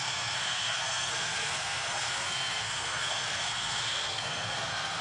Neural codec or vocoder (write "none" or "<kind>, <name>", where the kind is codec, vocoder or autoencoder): codec, SNAC